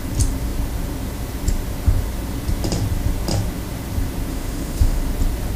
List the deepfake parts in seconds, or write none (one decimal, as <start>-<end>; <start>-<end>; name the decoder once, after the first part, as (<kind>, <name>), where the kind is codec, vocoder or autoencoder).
4.3-5.0 (autoencoder, DAC-VAE)